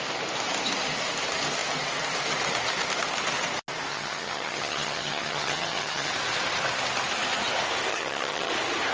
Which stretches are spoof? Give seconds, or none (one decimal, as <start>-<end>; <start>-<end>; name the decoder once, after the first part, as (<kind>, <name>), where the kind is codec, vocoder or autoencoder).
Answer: 3.9-6.1 (vocoder, HiFi-GAN); 7.9-8.5